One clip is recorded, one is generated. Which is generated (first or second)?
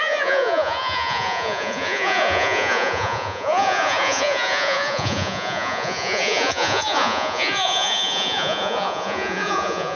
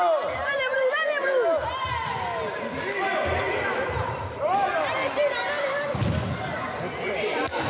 first